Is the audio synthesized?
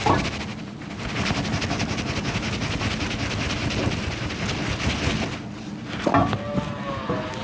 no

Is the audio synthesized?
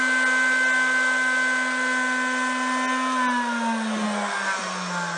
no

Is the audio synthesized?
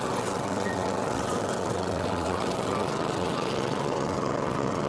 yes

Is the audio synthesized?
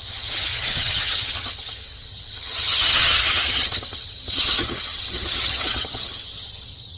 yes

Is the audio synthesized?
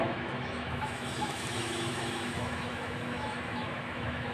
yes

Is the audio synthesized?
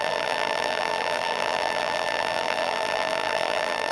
yes